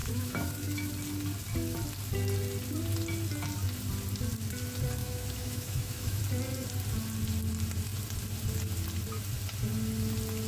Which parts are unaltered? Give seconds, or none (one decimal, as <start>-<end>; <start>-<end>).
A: 0.9-5.0; 6.2-10.5